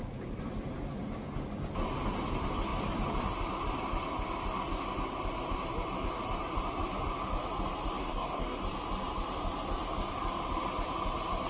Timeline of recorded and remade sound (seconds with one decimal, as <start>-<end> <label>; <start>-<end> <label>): 0.0-8.0 recorded; 8.0-8.6 remade; 8.6-11.5 recorded